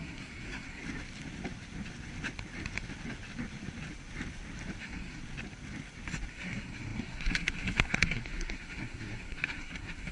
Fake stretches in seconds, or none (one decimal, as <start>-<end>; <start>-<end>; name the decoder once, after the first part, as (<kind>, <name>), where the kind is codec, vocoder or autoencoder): 0.0-0.8 (codec, SNAC); 4.8-5.2; 6.3-10.1